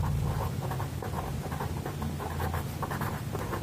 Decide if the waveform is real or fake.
real